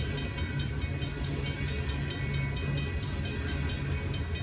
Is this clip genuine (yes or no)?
yes